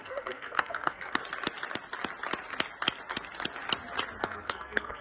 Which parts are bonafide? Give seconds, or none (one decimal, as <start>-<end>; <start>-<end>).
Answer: 1.2-4.2